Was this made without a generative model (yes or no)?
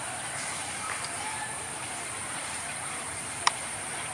no